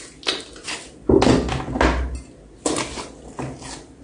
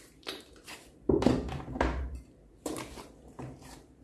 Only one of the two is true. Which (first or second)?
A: first